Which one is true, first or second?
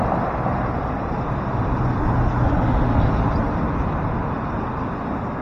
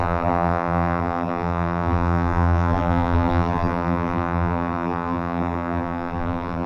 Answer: first